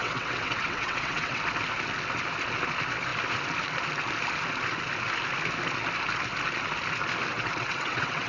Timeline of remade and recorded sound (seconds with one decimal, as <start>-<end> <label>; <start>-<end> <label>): 0.0-1.4 remade; 1.4-7.3 recorded; 7.3-8.3 remade